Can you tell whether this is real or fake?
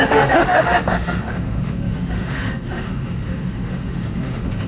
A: fake